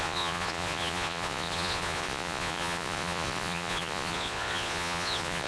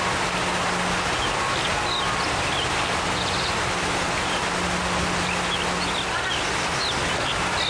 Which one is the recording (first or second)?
second